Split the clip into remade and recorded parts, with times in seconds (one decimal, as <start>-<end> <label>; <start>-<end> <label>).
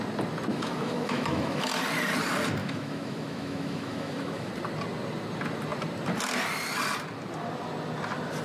0.0-0.5 recorded; 0.5-1.7 remade; 1.7-2.6 recorded; 2.6-4.5 remade; 4.5-8.4 recorded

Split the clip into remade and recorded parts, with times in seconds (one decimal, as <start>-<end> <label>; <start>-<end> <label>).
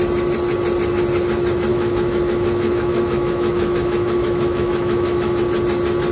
0.0-1.7 recorded; 1.7-5.4 remade; 5.4-6.1 recorded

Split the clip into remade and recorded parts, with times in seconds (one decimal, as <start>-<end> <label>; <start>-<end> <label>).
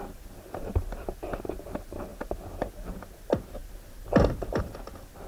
0.0-5.3 recorded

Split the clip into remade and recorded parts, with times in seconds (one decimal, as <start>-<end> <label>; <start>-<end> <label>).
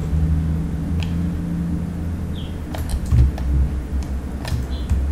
0.0-5.1 recorded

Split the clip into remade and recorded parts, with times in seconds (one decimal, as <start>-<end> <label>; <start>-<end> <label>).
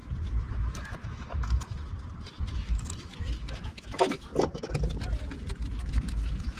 0.0-0.5 recorded; 0.5-1.9 remade; 1.9-2.5 recorded; 2.5-4.3 remade; 4.3-5.8 recorded; 5.8-6.6 remade